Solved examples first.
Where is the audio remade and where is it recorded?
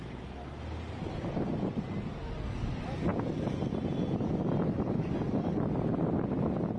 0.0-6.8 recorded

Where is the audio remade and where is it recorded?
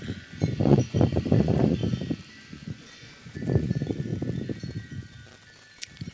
0.0-1.8 remade; 1.8-2.4 recorded; 2.4-4.1 remade; 4.1-6.1 recorded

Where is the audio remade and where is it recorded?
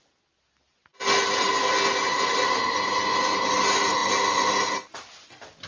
0.0-2.1 recorded; 2.1-2.6 remade; 2.6-5.7 recorded